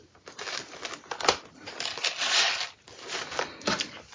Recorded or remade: recorded